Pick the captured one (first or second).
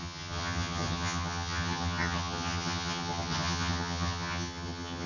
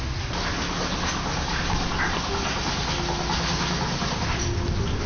second